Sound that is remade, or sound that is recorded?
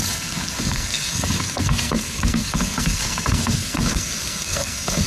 remade